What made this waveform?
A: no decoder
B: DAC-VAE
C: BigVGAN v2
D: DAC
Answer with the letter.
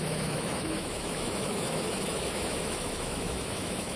B